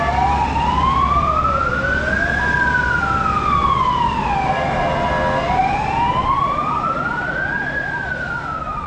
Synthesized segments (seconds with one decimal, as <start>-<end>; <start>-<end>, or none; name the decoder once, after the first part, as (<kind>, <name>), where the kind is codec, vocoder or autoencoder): none